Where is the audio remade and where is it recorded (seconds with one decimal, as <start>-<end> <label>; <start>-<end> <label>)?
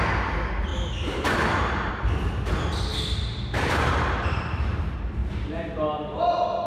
0.0-0.7 recorded; 0.7-1.9 remade; 1.9-2.9 recorded; 2.9-4.8 remade; 4.8-5.2 recorded; 5.2-6.2 remade; 6.2-6.7 recorded